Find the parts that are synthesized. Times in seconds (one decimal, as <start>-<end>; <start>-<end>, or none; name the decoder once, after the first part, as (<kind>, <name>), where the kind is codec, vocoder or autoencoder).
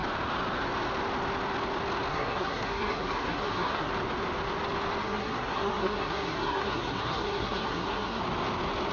2.1-3.9 (codec, SNAC); 5.0-8.2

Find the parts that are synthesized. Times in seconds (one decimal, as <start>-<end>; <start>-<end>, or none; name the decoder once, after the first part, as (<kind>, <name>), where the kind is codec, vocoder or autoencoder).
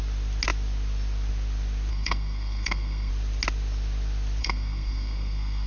1.9-3.1 (codec, SNAC); 4.4-5.7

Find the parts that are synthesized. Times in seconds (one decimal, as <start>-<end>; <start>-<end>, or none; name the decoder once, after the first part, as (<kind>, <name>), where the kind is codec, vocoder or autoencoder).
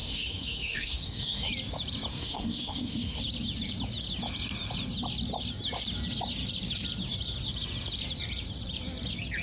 0.0-1.5 (codec, SNAC); 2.1-3.2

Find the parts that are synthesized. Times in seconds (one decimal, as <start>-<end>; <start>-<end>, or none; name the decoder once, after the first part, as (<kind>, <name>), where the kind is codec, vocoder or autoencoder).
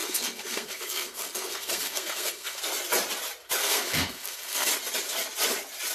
0.0-2.6 (codec, SNAC); 3.6-4.7